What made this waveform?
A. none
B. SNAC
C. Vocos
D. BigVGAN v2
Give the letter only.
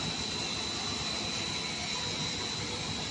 A